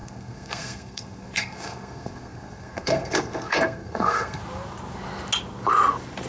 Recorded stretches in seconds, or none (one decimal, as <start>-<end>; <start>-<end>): 4.4-6.3